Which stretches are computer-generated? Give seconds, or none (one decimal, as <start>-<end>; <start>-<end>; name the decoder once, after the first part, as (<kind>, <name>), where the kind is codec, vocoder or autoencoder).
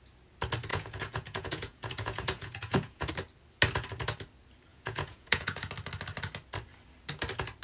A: 0.7-3.1 (vocoder, Vocos); 4.7-5.7